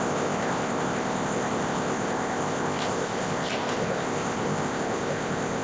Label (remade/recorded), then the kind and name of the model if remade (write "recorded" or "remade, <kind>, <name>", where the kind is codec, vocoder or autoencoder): remade, codec, ZipCodec